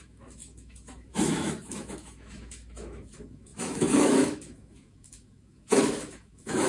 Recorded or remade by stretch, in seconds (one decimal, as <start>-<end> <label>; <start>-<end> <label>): 0.0-6.7 remade